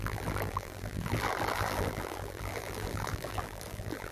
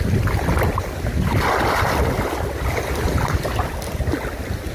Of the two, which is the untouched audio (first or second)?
second